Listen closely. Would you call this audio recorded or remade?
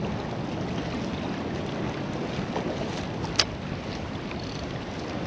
recorded